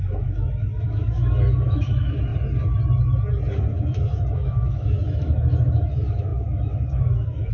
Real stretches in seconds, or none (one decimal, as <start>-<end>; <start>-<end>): 2.3-3.7